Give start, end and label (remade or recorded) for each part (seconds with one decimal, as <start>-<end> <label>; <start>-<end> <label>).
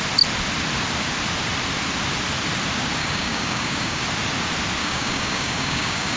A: 0.0-3.0 recorded; 3.0-4.0 remade; 4.0-4.8 recorded; 4.8-6.2 remade